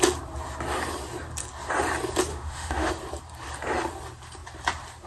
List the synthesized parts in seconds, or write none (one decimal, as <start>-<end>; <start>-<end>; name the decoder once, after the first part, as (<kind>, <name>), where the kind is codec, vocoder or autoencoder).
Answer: 2.3-2.9 (autoencoder, DAC-VAE)